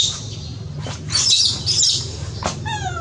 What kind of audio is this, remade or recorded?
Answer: remade